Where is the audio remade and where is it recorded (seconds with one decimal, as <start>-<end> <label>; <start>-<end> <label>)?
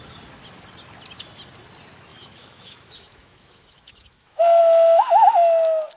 0.0-2.1 recorded; 2.1-4.6 remade; 4.6-6.0 recorded